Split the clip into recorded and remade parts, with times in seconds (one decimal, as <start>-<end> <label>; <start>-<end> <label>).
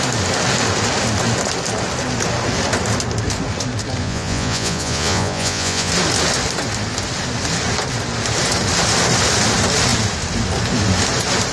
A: 0.0-4.0 recorded; 4.0-5.9 remade; 5.9-11.5 recorded